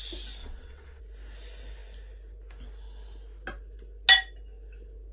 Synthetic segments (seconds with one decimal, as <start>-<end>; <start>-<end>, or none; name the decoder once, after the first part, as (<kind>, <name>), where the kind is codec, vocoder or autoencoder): 0.4-1.0 (vocoder, WaveNeXt)